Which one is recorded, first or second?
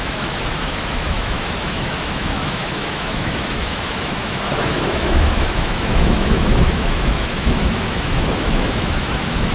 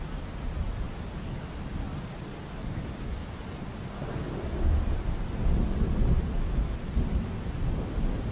second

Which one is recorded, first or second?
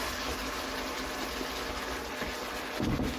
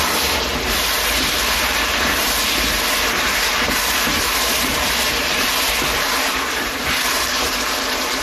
first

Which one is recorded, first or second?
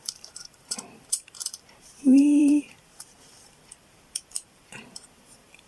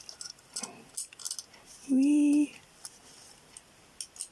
second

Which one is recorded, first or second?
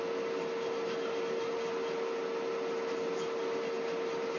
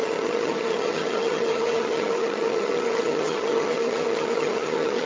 first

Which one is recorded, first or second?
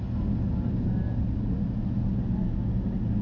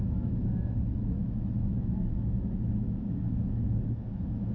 first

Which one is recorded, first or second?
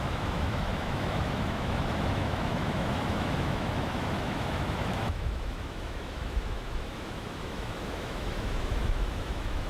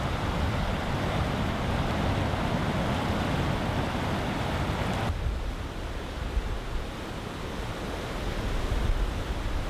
second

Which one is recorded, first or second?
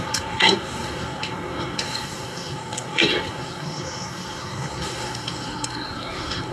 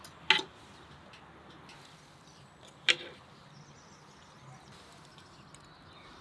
second